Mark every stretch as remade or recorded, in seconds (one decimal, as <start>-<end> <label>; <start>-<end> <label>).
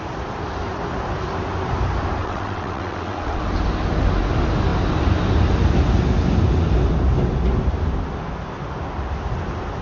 0.0-2.2 recorded; 2.2-3.4 remade; 3.4-9.8 recorded